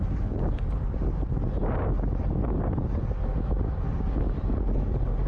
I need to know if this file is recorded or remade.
recorded